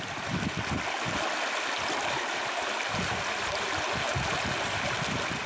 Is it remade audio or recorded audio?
recorded